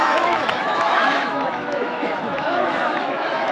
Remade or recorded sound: remade